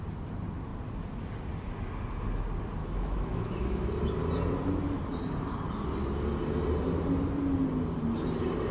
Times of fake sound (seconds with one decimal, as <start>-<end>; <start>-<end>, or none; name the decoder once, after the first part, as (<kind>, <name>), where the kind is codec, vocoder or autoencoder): 2.8-3.9 (autoencoder, DAC-VAE)